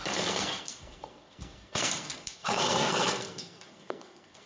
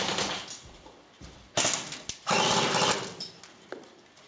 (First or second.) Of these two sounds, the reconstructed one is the first